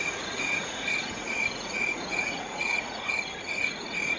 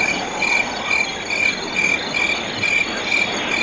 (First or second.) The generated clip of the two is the first